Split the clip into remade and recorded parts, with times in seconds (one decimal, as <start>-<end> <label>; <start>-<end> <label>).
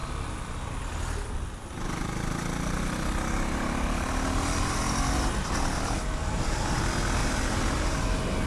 0.0-6.2 recorded; 6.2-6.8 remade; 6.8-7.2 recorded; 7.2-8.0 remade; 8.0-8.5 recorded